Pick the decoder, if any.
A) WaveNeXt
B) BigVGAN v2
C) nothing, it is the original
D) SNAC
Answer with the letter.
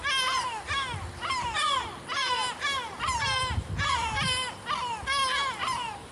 C